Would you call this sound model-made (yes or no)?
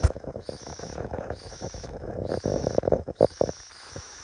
yes